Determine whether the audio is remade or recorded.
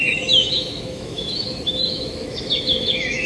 remade